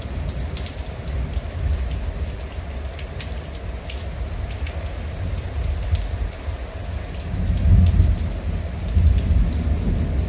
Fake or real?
real